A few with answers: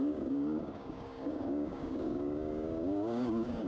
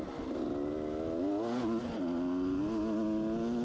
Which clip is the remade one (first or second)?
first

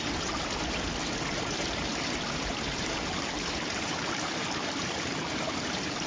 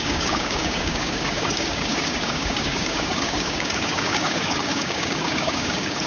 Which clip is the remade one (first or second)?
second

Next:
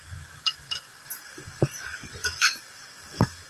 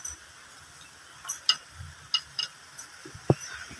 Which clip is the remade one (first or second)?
first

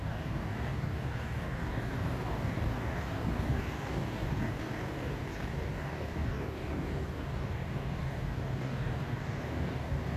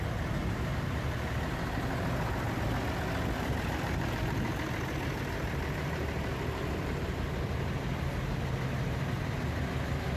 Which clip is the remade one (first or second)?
first